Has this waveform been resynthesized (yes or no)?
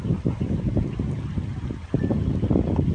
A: no